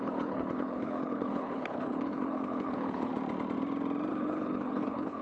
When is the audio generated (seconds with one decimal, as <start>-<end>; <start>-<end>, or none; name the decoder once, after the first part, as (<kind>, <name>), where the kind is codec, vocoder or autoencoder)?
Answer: 0.0-3.1 (codec, HILCodec); 4.1-5.2